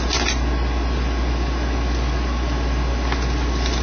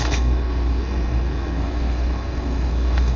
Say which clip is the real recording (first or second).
first